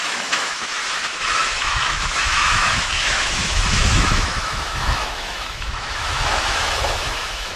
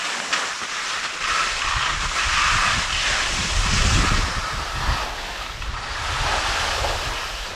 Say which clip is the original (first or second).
second